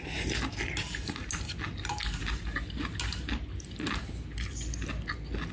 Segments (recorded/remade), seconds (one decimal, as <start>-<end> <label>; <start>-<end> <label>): 0.0-5.5 recorded